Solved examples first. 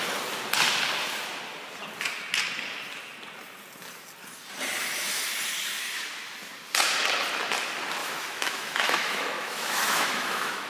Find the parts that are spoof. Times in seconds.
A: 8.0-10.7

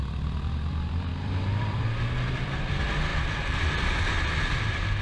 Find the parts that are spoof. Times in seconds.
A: 0.0-3.1; 4.1-5.0

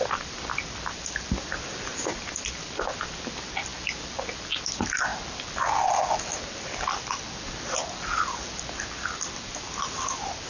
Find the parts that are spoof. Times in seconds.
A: none

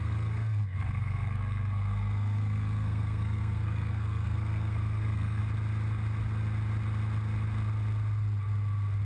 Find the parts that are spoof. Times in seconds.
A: 0.0-5.4

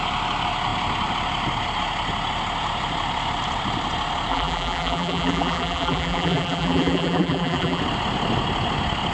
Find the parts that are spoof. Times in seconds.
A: 4.3-7.8

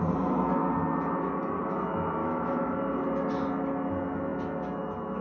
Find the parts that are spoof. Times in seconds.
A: 2.2-2.7

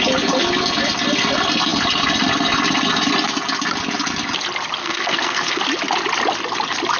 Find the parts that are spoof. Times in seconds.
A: 4.8-5.6

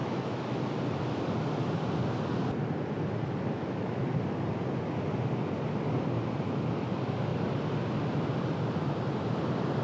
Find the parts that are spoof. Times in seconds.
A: 0.0-0.6; 3.5-4.0